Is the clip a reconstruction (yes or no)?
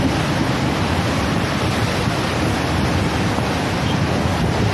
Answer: no